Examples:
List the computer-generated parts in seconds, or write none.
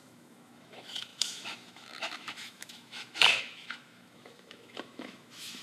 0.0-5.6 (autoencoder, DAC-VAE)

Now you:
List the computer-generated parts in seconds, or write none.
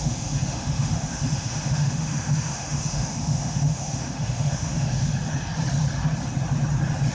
0.0-5.1 (autoencoder, DAC-VAE)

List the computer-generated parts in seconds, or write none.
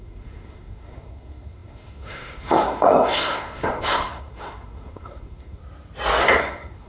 0.0-5.6 (codec, SNAC); 6.2-6.9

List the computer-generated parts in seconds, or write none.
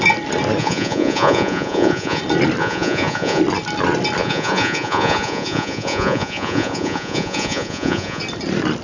0.6-2.2 (vocoder, Vocos); 2.6-3.4; 4.2-8.2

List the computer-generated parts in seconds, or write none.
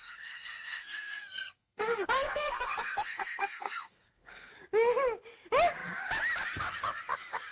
0.0-4.5 (codec, SNAC)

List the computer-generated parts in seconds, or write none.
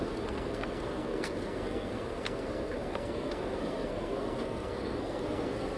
0.0-5.8 (codec, SNAC)